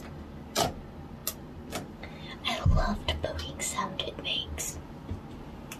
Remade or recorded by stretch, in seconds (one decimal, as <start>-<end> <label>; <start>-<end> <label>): 0.0-5.8 recorded